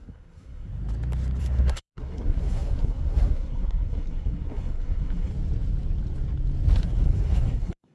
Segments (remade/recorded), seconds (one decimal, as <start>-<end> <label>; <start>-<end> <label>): 0.0-0.8 remade; 0.8-1.4 recorded; 1.4-5.3 remade; 5.3-6.8 recorded; 6.8-7.9 remade